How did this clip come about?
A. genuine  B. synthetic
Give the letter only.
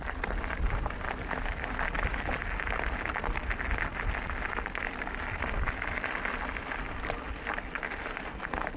A